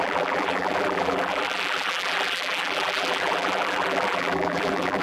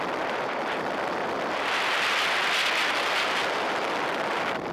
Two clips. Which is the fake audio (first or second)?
first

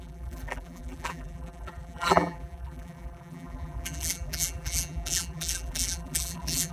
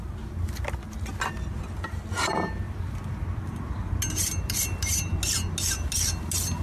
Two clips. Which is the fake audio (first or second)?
first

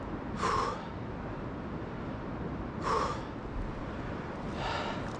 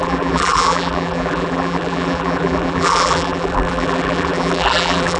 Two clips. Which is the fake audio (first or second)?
second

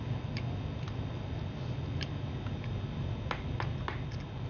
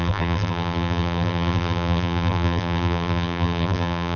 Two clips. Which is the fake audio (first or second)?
second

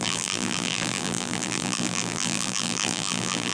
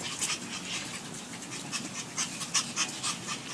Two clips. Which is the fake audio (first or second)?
first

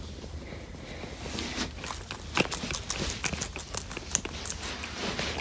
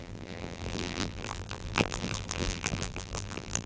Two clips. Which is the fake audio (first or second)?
second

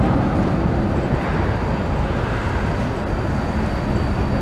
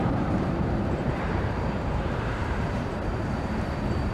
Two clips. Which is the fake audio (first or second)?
second